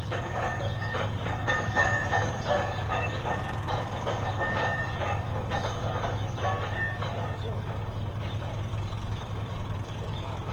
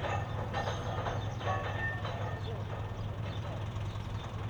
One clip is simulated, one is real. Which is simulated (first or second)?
first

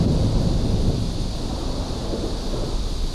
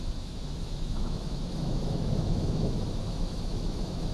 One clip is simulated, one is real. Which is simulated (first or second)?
second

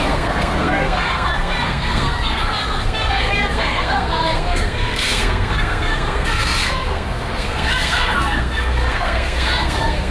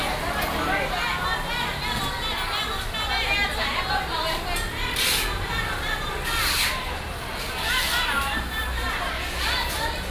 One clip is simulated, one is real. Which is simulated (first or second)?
first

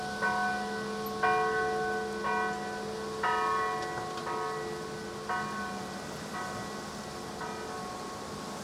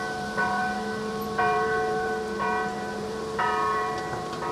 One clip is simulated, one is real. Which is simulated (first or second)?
second